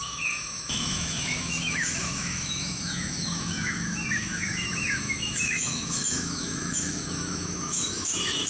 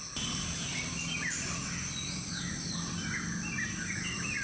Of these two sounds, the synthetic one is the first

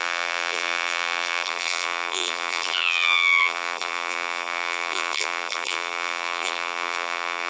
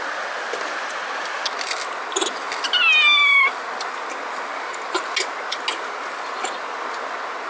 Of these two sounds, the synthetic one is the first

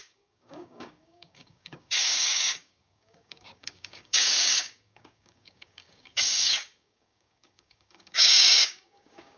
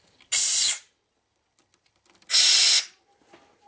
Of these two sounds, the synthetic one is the first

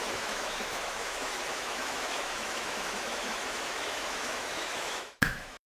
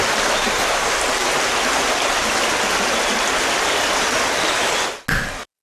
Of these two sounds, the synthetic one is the first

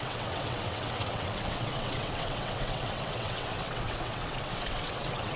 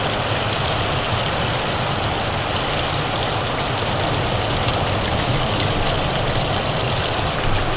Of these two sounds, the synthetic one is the first